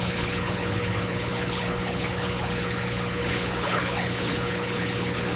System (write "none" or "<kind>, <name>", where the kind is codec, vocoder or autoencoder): codec, HILCodec